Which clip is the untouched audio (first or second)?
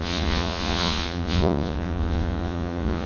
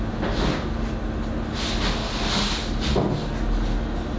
second